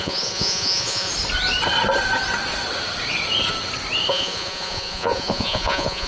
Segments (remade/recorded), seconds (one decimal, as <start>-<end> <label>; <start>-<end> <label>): 0.0-1.1 remade; 1.1-4.1 recorded; 4.1-6.1 remade